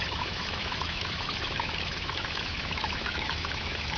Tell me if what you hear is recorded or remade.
remade